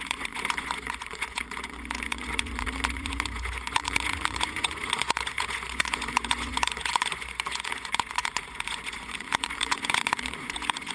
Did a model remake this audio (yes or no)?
yes